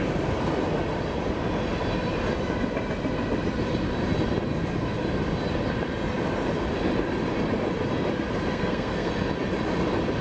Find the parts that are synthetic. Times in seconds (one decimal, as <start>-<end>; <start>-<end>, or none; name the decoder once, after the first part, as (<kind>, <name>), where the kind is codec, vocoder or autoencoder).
8.5-9.1 (codec, SNAC)

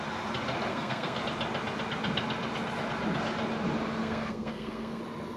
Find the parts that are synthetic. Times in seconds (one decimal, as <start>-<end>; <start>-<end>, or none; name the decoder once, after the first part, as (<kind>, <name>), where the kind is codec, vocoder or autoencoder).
0.7-1.2 (codec, SNAC); 4.0-5.0

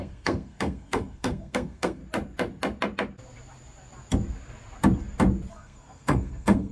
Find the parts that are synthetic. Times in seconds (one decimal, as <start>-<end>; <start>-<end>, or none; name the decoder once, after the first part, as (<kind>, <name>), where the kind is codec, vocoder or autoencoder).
0.0-2.0 (codec, SNAC); 5.5-6.7

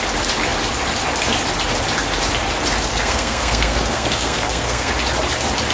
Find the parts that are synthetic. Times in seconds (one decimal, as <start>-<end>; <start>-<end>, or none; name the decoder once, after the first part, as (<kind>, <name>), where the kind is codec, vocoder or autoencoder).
2.9-4.9 (codec, SNAC)

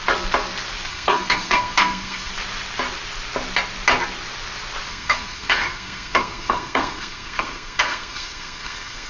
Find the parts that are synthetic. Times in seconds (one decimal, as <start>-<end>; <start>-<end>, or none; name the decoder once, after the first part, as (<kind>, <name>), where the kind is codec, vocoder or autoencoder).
0.9-2.3 (codec, SNAC); 4.9-9.1

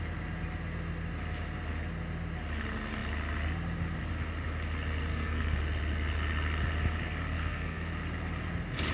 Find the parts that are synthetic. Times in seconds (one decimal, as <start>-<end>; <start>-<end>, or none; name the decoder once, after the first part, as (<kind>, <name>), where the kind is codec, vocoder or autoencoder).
5.1-5.6 (codec, SNAC); 7.3-7.9

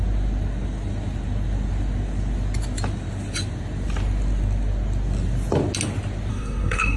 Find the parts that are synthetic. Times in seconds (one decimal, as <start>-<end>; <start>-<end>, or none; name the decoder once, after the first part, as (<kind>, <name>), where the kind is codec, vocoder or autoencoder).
6.3-7.0 (codec, SNAC)

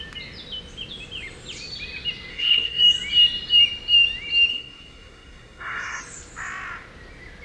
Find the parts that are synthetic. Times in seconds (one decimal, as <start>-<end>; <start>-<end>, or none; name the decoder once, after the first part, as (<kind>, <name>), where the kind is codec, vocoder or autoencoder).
2.3-2.8 (codec, SNAC); 4.5-6.0